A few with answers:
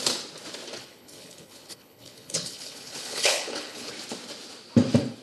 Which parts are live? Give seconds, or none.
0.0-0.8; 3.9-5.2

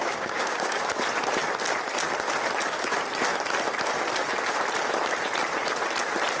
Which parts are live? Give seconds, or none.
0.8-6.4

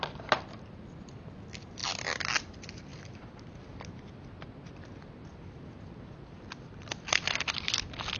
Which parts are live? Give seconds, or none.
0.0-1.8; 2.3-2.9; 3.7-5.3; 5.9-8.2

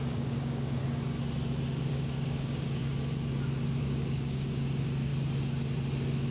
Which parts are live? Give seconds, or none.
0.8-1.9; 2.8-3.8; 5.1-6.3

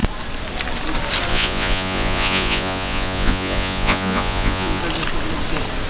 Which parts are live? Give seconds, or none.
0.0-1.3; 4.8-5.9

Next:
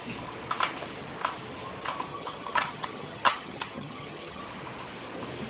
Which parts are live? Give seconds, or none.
0.0-2.1; 4.4-5.5

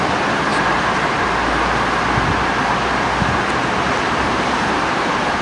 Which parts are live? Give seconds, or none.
0.5-3.7

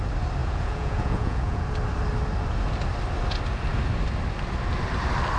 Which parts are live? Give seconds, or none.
0.0-0.4; 1.6-5.4